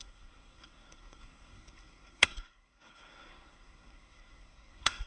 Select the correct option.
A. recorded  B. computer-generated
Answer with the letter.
B